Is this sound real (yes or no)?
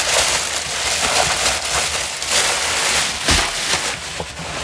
yes